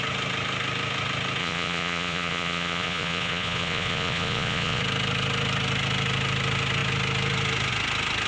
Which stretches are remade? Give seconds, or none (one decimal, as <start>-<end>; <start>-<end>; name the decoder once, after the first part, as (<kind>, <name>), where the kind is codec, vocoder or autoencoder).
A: 1.4-4.8 (vocoder, Vocos)